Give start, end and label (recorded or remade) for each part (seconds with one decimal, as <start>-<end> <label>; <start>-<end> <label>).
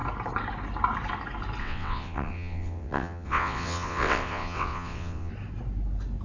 0.0-1.6 recorded; 1.6-5.3 remade; 5.3-6.2 recorded